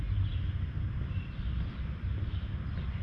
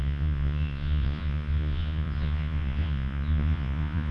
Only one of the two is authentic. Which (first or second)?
first